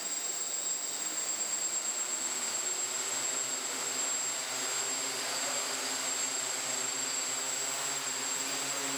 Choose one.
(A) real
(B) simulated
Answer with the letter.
A